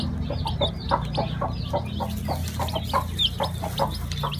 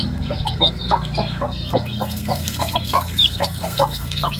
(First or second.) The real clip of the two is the first